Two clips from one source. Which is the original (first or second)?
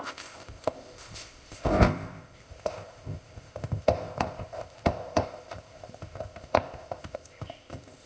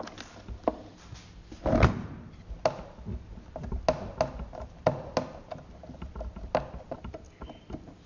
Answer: second